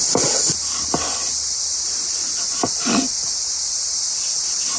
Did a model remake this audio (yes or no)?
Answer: no